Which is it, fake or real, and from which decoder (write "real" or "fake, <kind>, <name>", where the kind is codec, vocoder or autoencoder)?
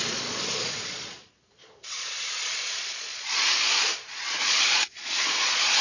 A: fake, vocoder, Vocos